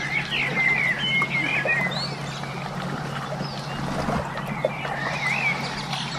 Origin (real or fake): real